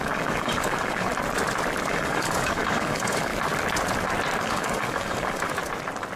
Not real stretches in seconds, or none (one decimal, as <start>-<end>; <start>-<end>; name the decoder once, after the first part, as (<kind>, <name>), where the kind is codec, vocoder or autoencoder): 0.0-1.1 (codec, DAC); 1.9-3.3; 4.4-5.6